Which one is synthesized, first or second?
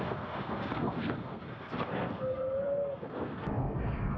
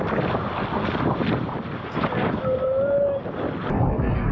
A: first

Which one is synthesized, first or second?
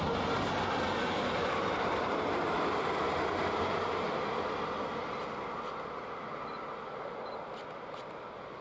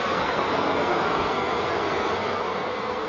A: second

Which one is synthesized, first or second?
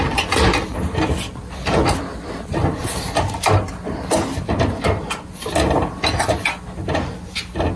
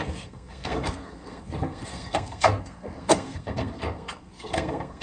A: second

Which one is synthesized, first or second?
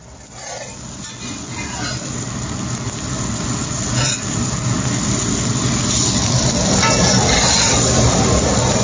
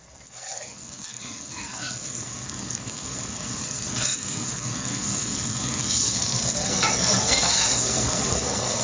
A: second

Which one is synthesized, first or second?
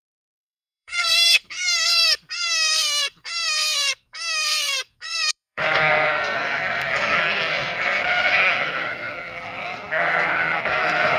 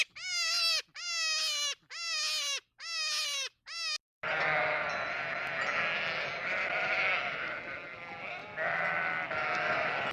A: first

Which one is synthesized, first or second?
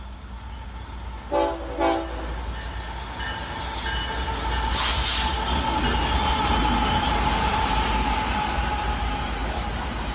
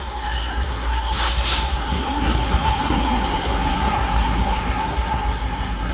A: second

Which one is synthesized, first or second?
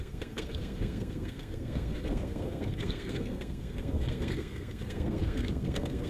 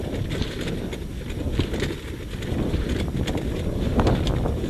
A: first